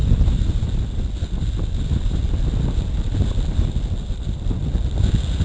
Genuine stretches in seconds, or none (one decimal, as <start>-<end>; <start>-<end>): 0.0-5.4